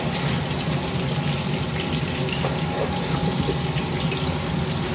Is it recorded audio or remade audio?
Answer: recorded